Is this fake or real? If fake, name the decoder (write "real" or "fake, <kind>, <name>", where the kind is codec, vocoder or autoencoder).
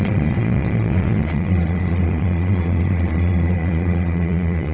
fake, vocoder, Vocos